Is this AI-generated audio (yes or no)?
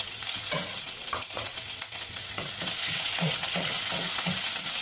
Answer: yes